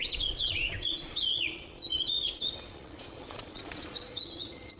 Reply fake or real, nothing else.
fake